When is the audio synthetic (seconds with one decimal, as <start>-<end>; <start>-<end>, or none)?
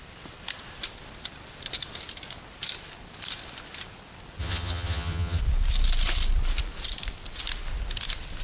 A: 4.4-5.4